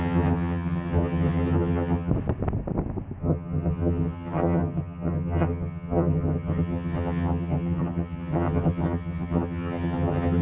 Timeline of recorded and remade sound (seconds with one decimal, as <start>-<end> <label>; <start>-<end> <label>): 0.0-2.1 remade; 2.1-3.2 recorded; 3.2-10.4 remade